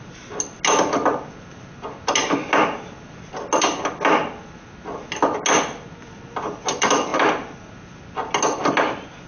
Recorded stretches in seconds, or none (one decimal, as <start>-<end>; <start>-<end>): 0.0-9.3